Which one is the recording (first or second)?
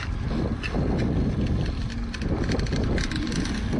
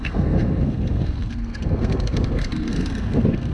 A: first